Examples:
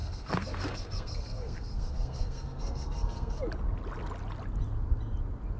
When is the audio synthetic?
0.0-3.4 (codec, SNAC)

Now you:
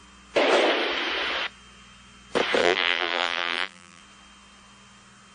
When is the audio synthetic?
2.6-4.0 (vocoder, BigVGAN v2)

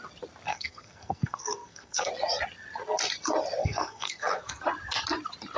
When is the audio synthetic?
0.5-2.1 (codec, SNAC); 3.6-4.6

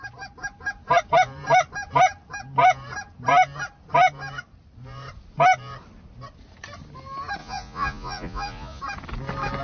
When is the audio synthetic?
7.4-8.8 (vocoder, Vocos)